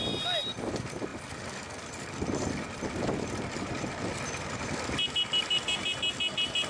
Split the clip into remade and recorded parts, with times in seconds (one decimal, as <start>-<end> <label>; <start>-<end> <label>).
0.0-6.7 recorded

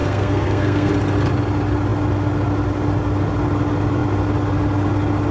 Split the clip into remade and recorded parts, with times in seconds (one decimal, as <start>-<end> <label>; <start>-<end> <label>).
0.0-0.9 remade; 0.9-5.3 recorded

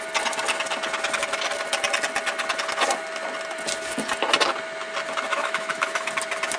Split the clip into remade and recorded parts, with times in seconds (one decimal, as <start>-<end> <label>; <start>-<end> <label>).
0.0-5.3 recorded; 5.3-6.1 remade; 6.1-6.6 recorded

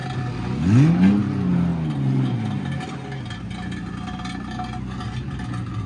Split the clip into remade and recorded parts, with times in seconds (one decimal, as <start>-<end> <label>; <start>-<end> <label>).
0.0-5.9 recorded

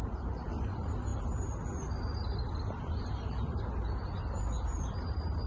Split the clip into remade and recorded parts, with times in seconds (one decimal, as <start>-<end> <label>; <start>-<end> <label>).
0.0-5.5 recorded

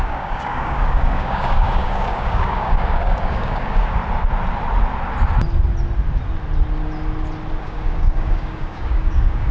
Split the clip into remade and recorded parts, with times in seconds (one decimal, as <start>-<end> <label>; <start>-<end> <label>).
0.0-4.0 remade; 4.0-7.6 recorded; 7.6-9.5 remade

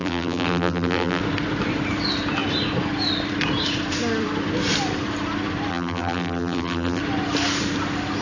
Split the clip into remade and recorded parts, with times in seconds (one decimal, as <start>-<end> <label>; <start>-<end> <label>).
0.0-1.2 remade; 1.2-5.7 recorded; 5.7-7.0 remade; 7.0-8.2 recorded